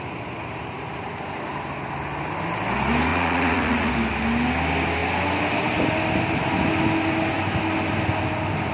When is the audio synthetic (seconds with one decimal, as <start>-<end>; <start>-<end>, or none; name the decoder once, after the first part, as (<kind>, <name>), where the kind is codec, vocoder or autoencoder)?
3.1-3.9 (vocoder, Vocos)